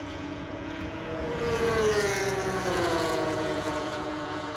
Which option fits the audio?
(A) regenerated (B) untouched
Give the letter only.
A